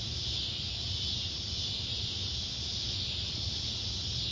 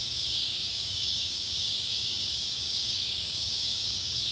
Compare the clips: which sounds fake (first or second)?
second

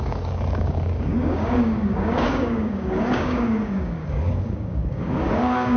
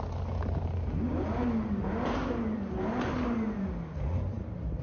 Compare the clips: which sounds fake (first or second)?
first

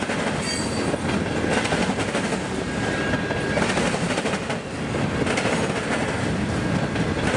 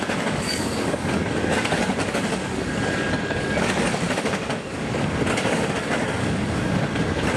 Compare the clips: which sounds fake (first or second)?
second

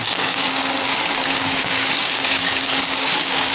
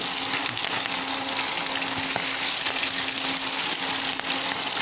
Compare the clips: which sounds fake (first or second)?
first